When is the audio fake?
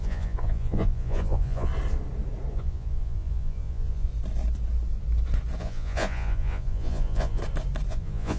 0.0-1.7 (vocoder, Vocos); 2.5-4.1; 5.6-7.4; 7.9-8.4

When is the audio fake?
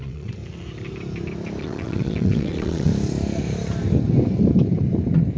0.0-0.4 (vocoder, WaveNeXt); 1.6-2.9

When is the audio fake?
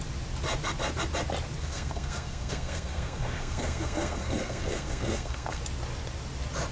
1.6-5.6 (codec, SNAC)